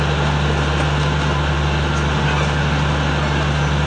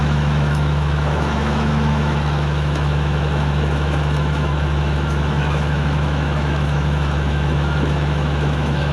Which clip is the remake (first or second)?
second